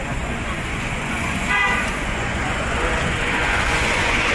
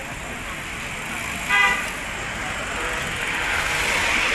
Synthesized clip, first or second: first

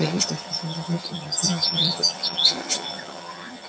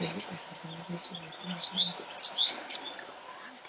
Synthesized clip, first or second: first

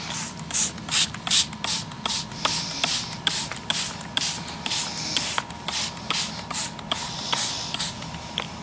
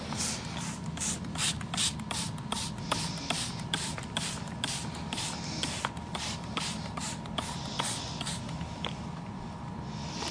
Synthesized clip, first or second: second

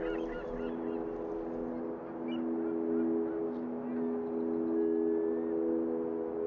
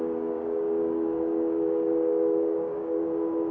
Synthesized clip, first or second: second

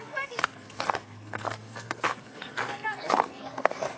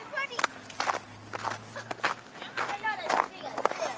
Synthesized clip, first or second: first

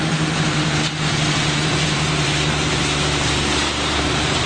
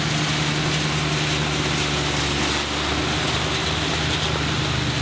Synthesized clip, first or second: first